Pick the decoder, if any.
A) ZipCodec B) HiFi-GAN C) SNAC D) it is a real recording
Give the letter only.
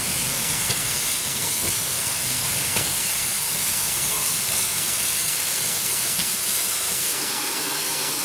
C